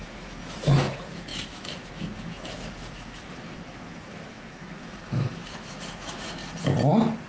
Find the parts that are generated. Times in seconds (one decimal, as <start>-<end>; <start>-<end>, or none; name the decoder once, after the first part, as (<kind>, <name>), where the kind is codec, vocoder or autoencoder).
0.0-6.4 (autoencoder, DAC-VAE)